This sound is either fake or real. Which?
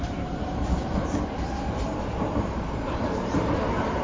fake